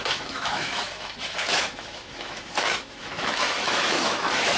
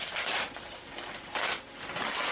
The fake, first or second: first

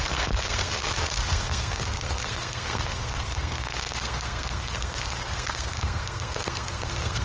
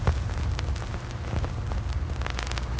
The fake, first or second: first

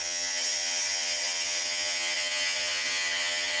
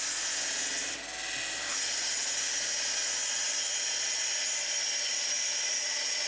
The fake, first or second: first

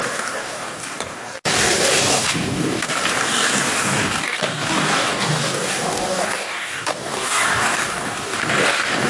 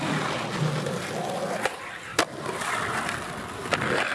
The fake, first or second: first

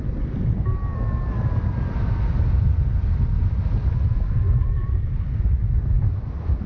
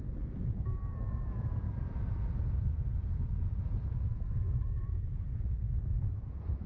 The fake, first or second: second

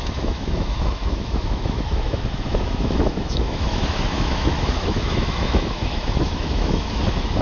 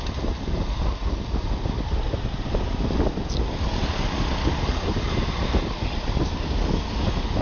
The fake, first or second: first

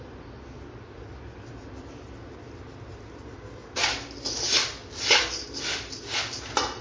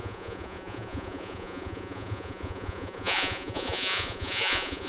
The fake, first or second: second